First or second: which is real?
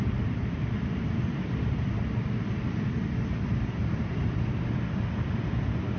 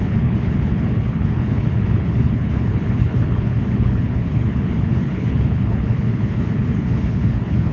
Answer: first